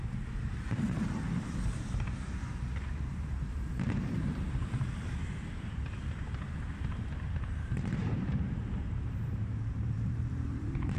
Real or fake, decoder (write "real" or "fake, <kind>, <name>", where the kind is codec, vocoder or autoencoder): fake, vocoder, BigVGAN v2